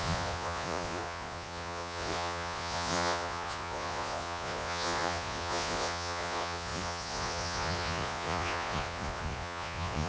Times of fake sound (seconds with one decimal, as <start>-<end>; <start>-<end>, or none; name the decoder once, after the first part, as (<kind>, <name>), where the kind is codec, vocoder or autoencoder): 0.0-10.1 (vocoder, Vocos)

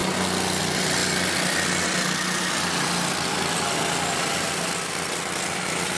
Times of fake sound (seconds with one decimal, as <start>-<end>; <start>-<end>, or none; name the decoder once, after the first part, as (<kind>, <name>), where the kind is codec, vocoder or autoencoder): none

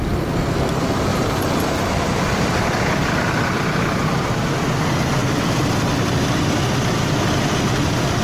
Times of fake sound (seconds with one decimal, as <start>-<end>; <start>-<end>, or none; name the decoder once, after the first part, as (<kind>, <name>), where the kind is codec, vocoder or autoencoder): 1.1-2.2 (vocoder, BigVGAN v2); 5.2-6.2

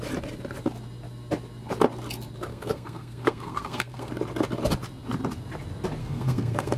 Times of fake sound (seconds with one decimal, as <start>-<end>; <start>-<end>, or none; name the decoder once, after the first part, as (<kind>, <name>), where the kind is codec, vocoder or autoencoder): 2.5-4.1 (codec, SNAC); 6.0-6.8